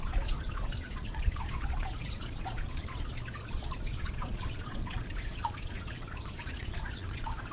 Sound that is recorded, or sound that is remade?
remade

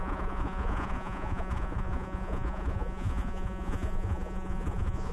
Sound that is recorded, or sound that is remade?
remade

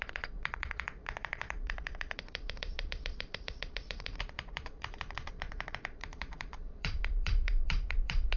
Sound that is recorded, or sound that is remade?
remade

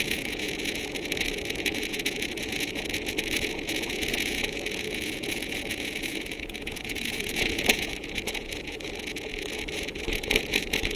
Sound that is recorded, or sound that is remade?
remade